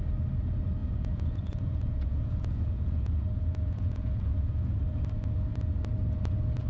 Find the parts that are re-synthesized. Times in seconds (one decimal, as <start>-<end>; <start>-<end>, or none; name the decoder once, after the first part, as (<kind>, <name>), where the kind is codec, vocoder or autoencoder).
0.8-4.8 (vocoder, Vocos)